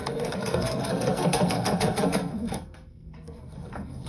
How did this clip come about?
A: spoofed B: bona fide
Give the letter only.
A